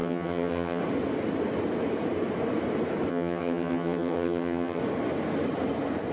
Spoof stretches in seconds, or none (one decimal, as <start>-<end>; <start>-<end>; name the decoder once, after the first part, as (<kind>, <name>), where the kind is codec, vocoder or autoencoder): 0.0-0.8 (vocoder, HiFi-GAN); 3.1-4.8

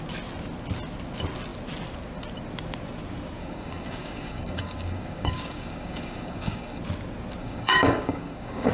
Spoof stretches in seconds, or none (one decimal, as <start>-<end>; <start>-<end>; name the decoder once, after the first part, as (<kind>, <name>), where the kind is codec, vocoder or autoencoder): 3.4-6.8 (codec, DAC); 7.4-8.7

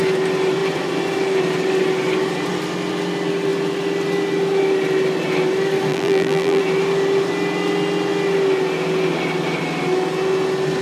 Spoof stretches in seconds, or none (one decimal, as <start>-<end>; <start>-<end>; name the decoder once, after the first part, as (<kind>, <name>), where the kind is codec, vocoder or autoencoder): 5.9-6.6 (vocoder, BigVGAN v2)

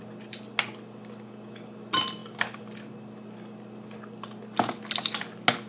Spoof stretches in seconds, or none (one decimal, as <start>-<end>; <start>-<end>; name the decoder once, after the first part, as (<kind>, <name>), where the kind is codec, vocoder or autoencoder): none